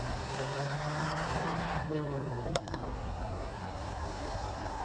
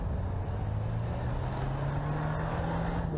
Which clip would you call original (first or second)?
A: second